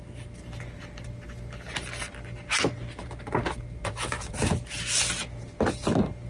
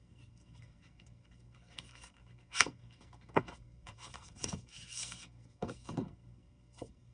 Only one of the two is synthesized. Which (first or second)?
second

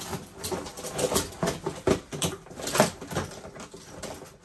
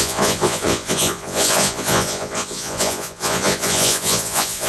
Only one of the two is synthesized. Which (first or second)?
second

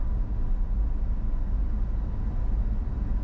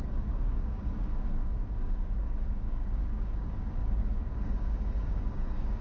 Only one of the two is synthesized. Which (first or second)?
second